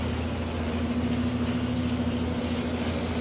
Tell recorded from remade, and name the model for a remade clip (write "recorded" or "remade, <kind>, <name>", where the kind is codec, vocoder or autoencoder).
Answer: recorded